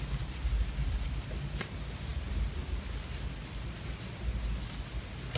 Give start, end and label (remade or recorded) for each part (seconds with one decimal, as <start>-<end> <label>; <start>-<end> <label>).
0.0-5.4 recorded